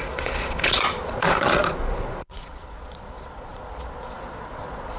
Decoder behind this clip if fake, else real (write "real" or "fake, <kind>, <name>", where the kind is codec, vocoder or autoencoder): fake, vocoder, Vocos